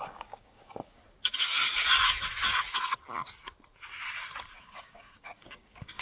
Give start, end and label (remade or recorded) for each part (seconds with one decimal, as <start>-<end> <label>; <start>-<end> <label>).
0.0-1.0 remade; 1.0-4.6 recorded; 4.6-6.0 remade